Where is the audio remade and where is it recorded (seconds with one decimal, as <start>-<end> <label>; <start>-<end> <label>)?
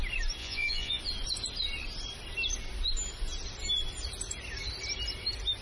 0.0-0.4 recorded; 0.4-1.0 remade; 1.0-5.6 recorded